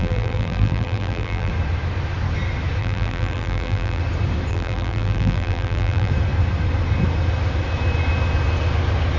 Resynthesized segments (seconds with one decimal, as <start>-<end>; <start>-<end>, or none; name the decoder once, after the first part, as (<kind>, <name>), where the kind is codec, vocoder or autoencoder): 0.0-1.5 (vocoder, BigVGAN v2); 2.8-4.0; 4.5-6.1